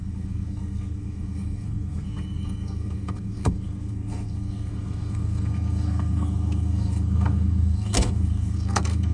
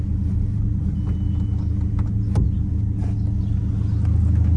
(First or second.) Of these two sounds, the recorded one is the second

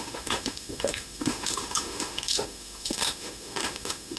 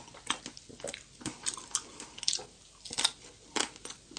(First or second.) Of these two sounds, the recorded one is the second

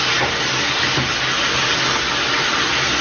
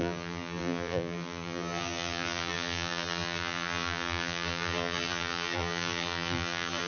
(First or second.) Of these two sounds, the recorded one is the first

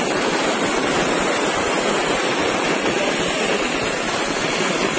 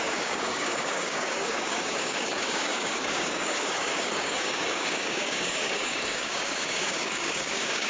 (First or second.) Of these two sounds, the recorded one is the first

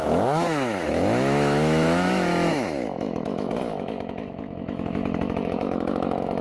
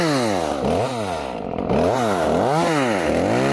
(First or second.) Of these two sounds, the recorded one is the second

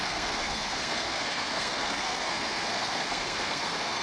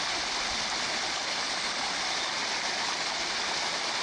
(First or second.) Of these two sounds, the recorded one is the second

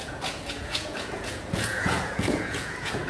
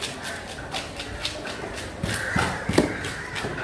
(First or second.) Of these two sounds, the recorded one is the second